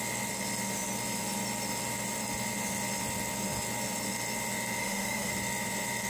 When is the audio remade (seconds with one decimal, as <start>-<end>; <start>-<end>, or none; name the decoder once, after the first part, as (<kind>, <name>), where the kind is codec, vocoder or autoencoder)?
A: 4.8-5.3 (autoencoder, DAC-VAE)